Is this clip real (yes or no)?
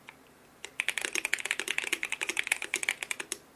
yes